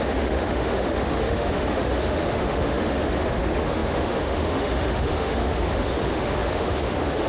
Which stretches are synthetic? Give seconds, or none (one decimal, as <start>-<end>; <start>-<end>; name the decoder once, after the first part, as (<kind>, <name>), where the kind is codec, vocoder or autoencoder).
0.0-7.3 (autoencoder, DAC-VAE)